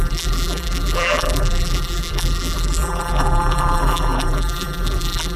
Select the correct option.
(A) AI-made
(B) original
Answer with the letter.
A